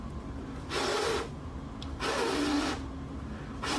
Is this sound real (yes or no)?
yes